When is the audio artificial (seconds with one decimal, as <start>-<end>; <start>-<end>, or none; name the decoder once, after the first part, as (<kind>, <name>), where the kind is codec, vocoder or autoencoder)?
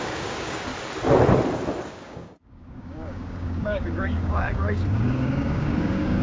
0.0-0.7 (codec, DAC); 1.9-6.2